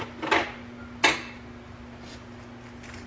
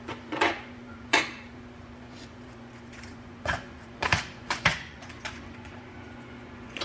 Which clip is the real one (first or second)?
first